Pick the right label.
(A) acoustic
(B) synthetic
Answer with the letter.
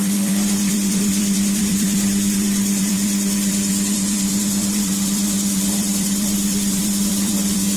B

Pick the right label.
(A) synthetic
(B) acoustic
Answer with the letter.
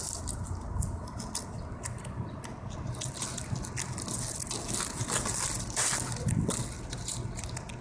B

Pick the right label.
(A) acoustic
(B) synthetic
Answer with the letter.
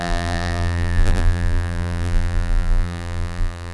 B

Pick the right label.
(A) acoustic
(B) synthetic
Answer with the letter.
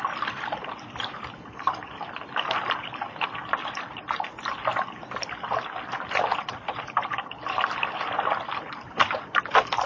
B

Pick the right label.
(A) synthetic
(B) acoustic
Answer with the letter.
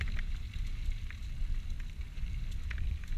B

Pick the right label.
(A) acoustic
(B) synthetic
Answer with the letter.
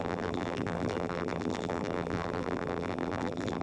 B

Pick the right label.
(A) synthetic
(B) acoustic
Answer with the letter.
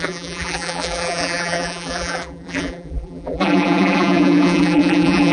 A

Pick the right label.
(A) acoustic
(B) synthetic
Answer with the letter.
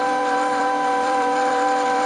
B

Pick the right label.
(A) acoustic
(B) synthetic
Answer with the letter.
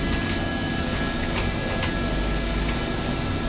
A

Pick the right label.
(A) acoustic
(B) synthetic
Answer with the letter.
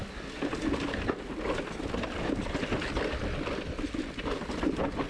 A